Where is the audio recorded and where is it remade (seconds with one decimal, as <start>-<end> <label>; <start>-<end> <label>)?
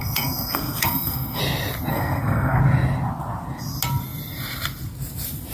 0.0-1.4 remade; 1.4-1.9 recorded; 1.9-2.6 remade; 2.6-5.5 recorded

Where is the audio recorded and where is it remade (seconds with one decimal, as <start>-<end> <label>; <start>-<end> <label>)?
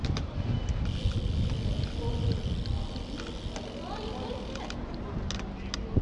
0.0-6.0 recorded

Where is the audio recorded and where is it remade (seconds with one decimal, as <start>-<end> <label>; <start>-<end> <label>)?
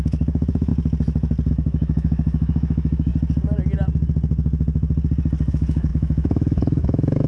0.0-0.7 remade; 0.7-1.5 recorded; 1.5-3.1 remade; 3.1-5.5 recorded; 5.5-7.3 remade